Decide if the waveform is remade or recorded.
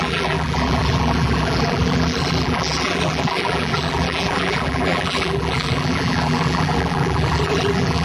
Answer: remade